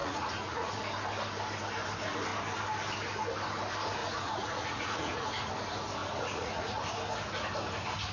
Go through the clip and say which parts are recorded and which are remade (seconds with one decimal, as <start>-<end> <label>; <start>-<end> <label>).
0.0-0.8 remade; 0.8-4.0 recorded; 4.0-5.5 remade; 5.5-6.0 recorded; 6.0-6.8 remade; 6.8-8.1 recorded